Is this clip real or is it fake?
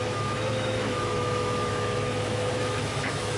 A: fake